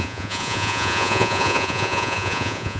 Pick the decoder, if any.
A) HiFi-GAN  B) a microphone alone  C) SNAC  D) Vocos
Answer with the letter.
D